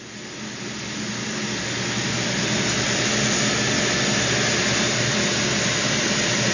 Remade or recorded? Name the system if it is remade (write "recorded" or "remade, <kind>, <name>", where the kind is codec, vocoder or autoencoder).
recorded